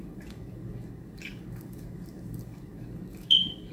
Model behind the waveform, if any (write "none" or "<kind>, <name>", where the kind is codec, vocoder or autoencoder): codec, DAC